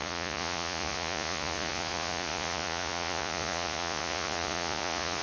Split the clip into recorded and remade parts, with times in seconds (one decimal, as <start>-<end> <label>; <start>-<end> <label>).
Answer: 0.0-5.2 remade